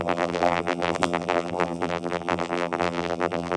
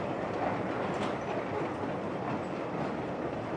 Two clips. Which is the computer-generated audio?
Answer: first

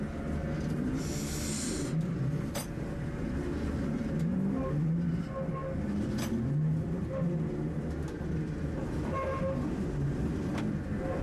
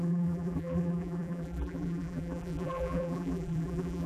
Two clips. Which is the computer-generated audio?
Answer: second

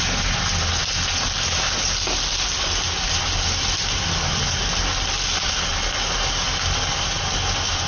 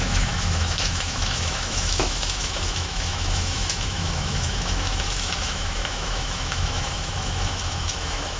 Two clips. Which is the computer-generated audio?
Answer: second